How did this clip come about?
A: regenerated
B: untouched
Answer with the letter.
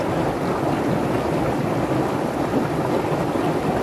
B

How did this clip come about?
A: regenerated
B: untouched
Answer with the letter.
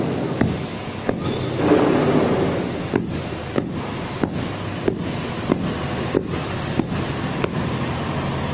B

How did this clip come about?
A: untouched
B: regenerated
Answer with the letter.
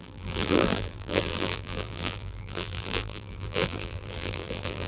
B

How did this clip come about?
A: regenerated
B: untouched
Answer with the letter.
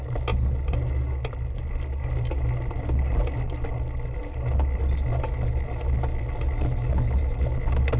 B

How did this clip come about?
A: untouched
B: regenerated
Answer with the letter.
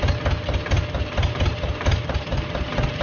A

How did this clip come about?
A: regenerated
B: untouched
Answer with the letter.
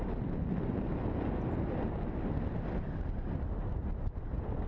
B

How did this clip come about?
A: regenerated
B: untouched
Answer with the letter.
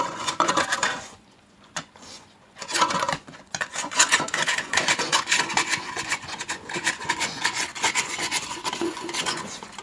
A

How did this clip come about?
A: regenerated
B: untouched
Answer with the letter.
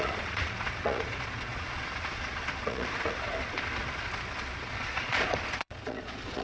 A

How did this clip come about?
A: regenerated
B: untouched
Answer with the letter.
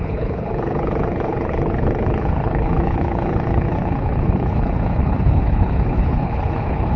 A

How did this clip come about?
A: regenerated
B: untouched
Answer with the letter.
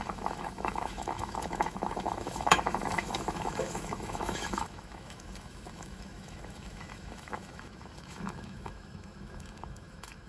A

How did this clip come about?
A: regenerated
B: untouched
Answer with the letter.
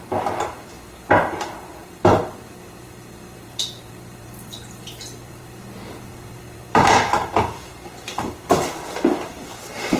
A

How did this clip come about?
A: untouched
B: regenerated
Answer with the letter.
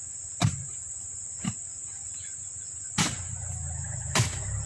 A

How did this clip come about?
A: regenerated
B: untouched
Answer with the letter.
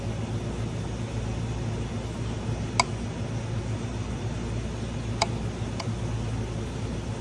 B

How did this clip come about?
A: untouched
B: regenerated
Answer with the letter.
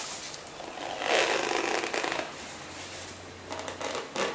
A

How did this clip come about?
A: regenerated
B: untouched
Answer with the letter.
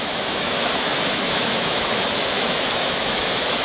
A